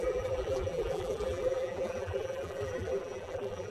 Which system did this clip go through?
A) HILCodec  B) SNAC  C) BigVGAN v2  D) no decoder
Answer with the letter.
C